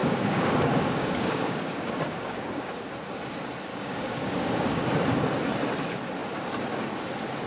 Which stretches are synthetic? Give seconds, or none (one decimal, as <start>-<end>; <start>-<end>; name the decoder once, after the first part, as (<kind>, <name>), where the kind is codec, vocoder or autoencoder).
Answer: 0.0-2.9 (codec, DAC); 3.7-4.9